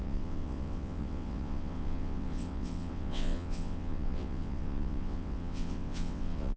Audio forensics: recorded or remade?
remade